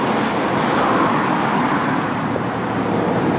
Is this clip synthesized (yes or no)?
no